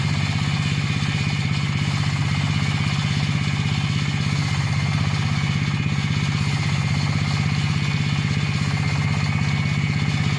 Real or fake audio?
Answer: real